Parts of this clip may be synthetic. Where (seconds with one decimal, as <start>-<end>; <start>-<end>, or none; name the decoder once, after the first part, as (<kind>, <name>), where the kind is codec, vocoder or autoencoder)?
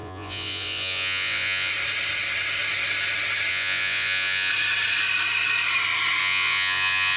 0.0-1.7 (vocoder, Vocos); 3.5-4.5; 6.2-7.2